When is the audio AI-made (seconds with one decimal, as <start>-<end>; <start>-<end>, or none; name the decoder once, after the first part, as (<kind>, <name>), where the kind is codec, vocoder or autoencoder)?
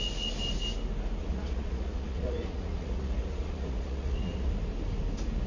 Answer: 1.2-4.5 (vocoder, Vocos)